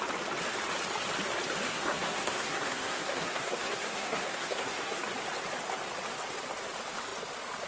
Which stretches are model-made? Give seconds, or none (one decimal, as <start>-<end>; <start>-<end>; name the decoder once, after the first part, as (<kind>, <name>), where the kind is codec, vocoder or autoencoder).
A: 1.7-5.0 (codec, SNAC)